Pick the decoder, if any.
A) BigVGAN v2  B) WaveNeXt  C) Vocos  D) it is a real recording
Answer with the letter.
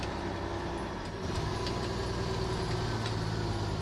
D